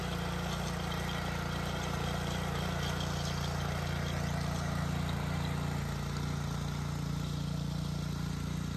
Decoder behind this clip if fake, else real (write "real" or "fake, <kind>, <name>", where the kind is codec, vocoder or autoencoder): real